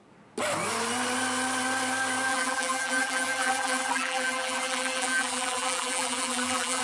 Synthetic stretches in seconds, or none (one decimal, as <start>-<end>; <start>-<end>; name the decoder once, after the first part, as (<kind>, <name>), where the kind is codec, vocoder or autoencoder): 2.3-6.8 (vocoder, BigVGAN v2)